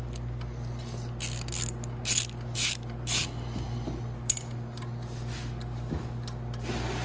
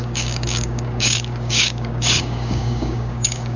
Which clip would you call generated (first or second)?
second